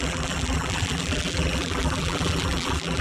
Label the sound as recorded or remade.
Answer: remade